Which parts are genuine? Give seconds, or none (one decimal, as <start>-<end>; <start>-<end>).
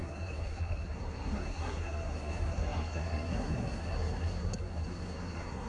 none